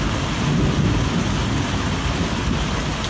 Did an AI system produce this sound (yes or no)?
no